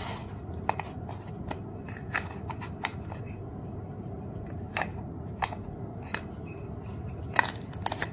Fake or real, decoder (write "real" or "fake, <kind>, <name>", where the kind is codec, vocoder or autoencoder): real